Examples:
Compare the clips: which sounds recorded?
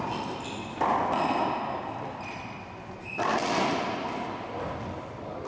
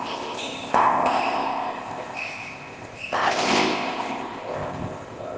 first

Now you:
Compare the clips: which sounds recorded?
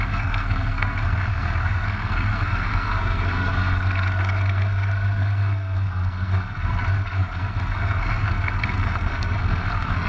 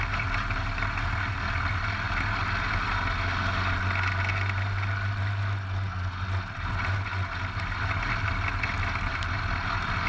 second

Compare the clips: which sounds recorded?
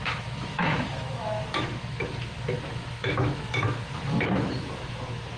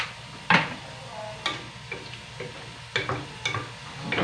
second